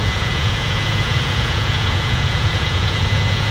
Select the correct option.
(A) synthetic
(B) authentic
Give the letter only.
A